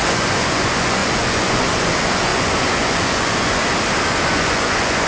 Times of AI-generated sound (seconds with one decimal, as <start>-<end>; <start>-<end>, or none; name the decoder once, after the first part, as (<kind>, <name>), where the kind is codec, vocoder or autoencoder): 0.0-3.6 (vocoder, Vocos); 4.1-5.1